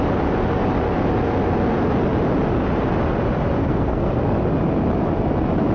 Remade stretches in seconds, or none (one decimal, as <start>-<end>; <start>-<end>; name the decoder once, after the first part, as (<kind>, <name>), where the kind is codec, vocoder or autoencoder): 3.6-4.2 (codec, SNAC)